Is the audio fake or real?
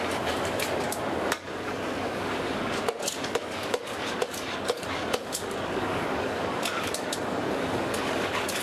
fake